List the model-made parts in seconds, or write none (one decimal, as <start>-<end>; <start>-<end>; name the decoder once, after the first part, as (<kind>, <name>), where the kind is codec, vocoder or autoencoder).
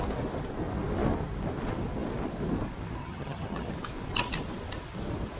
3.0-3.7 (vocoder, HiFi-GAN)